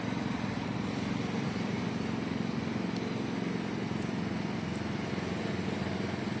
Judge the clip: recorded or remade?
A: recorded